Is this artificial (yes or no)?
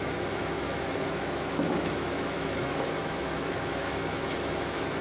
yes